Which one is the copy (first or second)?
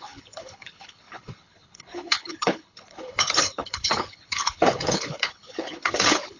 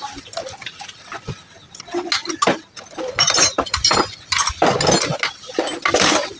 first